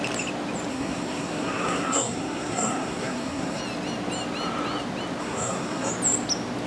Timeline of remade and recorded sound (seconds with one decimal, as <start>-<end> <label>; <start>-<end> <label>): 0.0-0.7 recorded; 0.7-3.6 remade; 3.6-5.2 recorded; 5.2-5.9 remade; 5.9-6.7 recorded